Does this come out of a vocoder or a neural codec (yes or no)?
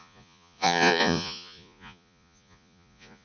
yes